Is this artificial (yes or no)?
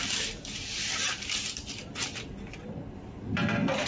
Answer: no